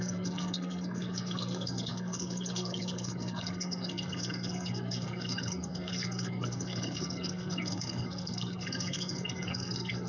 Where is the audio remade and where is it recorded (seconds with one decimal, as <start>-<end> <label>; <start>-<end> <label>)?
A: 0.0-10.1 remade